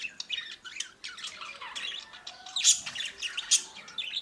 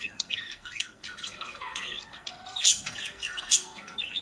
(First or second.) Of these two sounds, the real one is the first